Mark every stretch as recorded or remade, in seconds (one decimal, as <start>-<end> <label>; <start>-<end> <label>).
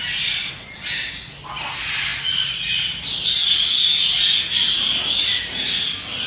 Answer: 0.0-6.3 recorded